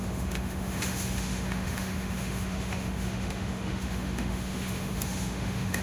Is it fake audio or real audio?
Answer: fake